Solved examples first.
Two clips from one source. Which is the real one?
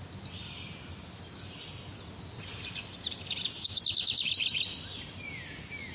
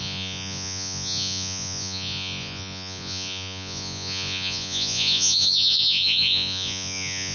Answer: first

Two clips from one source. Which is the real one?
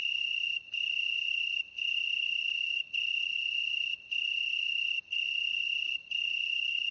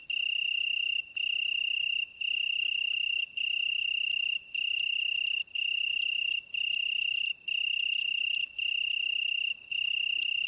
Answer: second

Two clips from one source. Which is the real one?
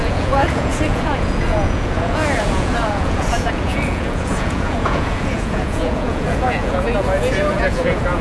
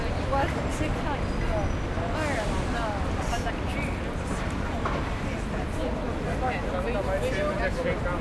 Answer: second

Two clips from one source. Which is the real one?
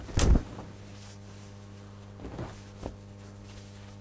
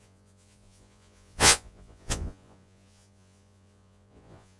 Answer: first